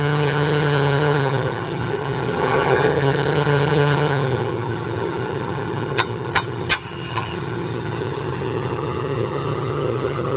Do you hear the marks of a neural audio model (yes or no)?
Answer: yes